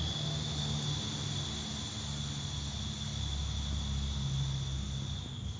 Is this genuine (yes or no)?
yes